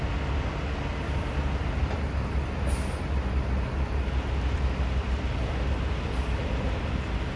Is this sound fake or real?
real